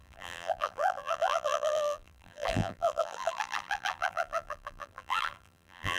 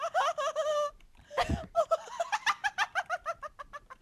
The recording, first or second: second